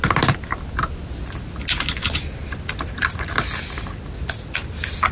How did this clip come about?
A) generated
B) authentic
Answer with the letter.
B